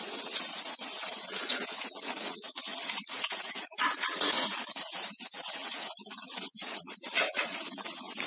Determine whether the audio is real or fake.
fake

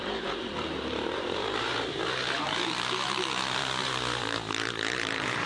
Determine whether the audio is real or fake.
fake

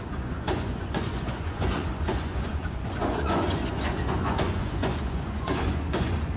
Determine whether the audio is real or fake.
fake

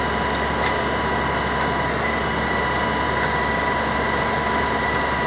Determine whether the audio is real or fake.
real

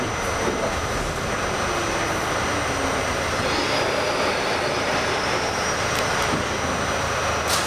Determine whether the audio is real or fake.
real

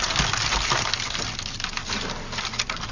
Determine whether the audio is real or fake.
real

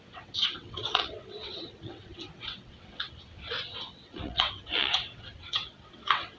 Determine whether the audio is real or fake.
fake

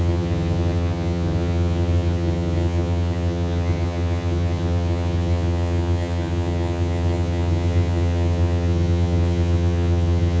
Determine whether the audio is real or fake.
fake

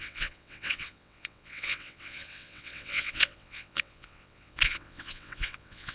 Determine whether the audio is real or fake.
fake